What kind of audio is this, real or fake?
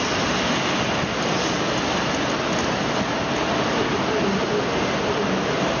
real